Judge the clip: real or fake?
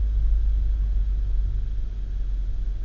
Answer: real